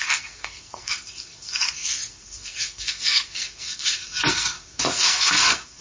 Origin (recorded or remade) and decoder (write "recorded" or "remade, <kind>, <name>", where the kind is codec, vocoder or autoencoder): remade, codec, SNAC